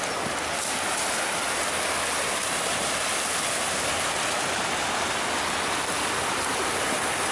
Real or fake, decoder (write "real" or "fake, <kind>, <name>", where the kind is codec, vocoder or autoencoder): real